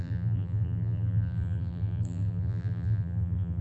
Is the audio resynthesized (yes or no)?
yes